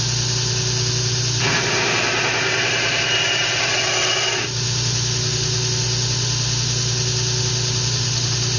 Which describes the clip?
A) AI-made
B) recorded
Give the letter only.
B